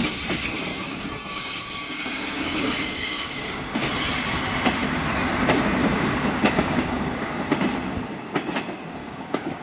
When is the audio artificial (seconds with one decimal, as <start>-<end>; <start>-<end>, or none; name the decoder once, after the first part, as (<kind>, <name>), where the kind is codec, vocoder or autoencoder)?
0.7-3.9 (codec, DAC); 5.8-7.3; 9.0-9.6